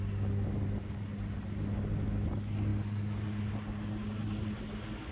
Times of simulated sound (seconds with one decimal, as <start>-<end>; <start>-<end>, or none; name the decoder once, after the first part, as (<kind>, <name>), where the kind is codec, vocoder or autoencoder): none